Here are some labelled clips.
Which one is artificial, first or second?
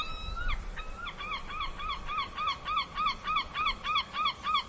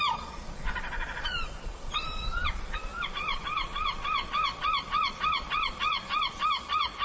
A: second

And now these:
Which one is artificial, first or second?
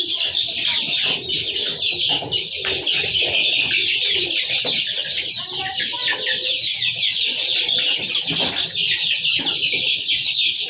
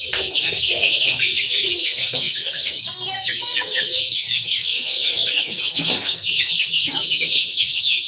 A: second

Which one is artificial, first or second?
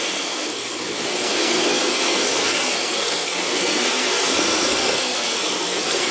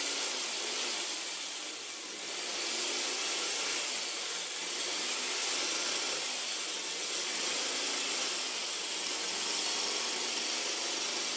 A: first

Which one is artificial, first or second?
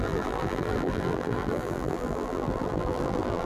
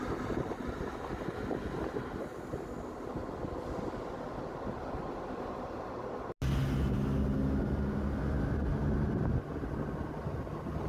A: first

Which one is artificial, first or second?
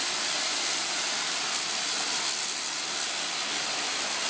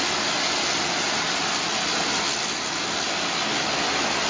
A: first